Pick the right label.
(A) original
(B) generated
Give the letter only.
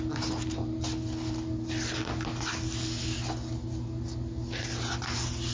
A